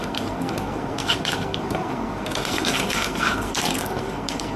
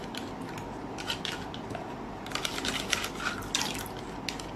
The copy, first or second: first